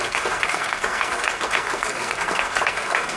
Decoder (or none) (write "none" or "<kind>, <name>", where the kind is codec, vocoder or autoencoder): codec, SNAC